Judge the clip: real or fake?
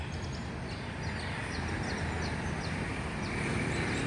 real